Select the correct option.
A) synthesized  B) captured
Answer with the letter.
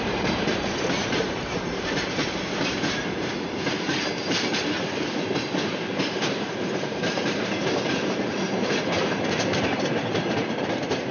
A